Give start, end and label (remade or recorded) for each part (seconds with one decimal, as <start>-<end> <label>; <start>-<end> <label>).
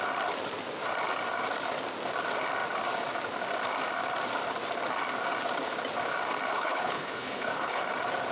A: 0.0-6.5 recorded; 6.5-7.8 remade; 7.8-8.3 recorded